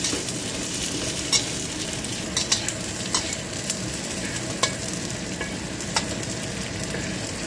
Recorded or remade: recorded